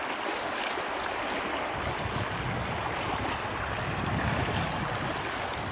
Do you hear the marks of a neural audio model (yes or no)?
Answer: no